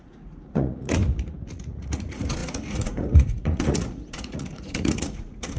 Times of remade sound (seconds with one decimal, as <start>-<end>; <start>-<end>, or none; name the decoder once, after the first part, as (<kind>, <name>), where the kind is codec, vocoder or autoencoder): 0.0-1.0 (vocoder, Vocos); 1.5-5.6